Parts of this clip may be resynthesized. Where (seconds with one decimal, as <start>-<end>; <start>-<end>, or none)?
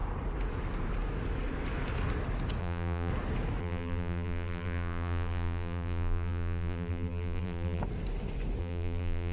2.6-3.1; 3.6-7.8; 8.6-9.3